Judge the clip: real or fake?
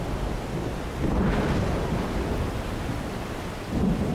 real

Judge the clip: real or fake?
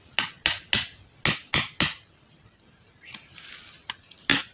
real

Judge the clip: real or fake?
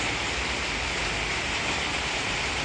real